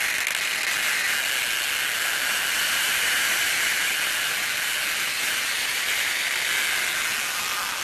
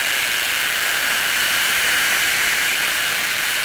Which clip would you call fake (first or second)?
second